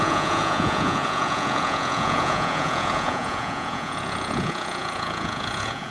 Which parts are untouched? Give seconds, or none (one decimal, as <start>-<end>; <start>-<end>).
none